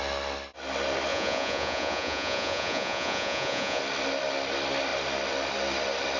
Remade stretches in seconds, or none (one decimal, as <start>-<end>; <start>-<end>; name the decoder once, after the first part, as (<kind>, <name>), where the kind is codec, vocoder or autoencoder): 1.1-3.8 (vocoder, Vocos)